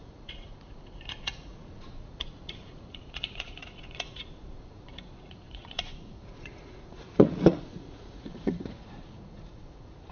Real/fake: fake